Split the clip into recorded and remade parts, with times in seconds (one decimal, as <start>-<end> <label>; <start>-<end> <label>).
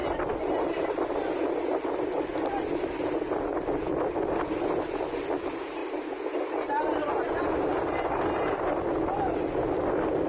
0.0-10.3 recorded